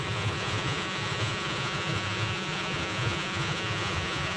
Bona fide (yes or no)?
no